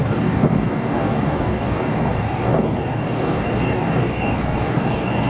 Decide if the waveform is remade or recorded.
remade